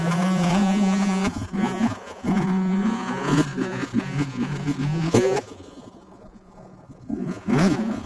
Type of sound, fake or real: fake